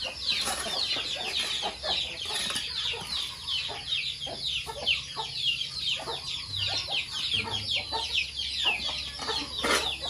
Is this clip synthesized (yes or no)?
no